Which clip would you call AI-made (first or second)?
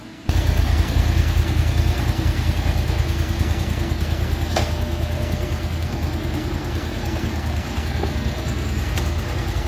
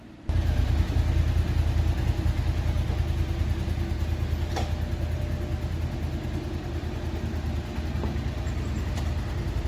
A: first